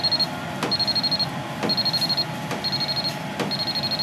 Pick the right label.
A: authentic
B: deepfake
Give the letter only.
A